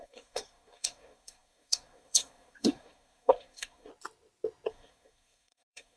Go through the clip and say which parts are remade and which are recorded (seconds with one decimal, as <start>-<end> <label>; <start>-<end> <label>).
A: 0.0-3.9 remade; 3.9-4.7 recorded; 4.7-6.0 remade